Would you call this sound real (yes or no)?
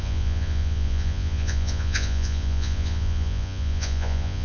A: no